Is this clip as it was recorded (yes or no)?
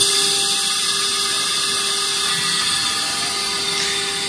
yes